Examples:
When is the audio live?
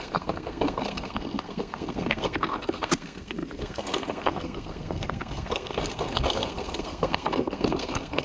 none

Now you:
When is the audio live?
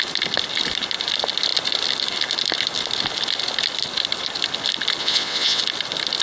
0.0-5.0; 5.6-6.2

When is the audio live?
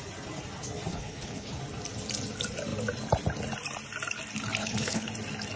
0.0-0.9; 1.6-4.6; 5.1-5.6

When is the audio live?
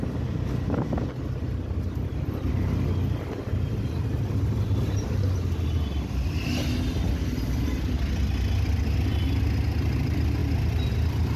0.0-11.4